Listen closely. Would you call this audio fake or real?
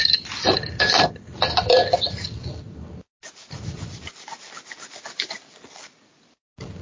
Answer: real